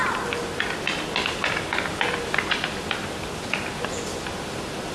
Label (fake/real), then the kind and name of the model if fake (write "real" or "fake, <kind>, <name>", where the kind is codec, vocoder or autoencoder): real